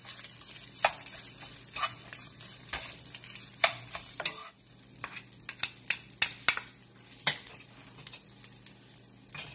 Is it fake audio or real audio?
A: real